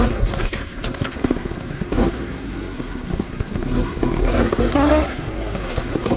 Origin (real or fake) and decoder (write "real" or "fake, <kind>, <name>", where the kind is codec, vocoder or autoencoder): fake, codec, SNAC